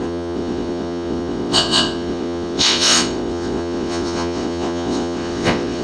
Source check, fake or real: fake